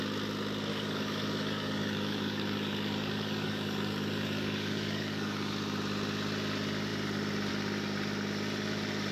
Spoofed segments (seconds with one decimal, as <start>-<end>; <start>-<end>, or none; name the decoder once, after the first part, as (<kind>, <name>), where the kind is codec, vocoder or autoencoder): 0.7-5.5 (codec, DAC)